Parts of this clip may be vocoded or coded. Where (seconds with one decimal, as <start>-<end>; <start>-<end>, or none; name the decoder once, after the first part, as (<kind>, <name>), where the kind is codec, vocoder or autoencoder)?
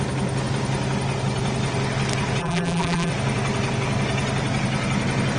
2.4-3.1 (vocoder, BigVGAN v2)